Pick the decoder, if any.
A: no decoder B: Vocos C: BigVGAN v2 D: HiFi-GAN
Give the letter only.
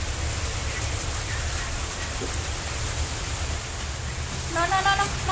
A